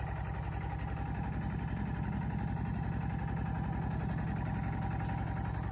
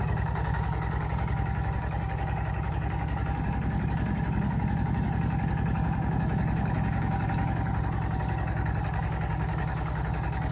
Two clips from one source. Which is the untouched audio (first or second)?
first